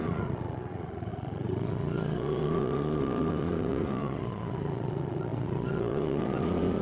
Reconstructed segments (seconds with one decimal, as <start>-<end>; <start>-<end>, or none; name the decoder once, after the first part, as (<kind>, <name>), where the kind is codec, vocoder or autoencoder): 0.0-6.8 (vocoder, Vocos)